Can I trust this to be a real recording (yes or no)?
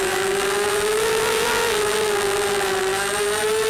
no